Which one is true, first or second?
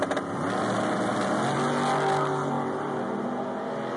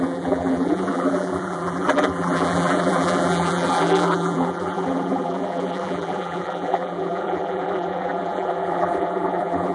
first